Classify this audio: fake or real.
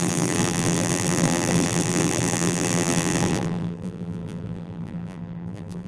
fake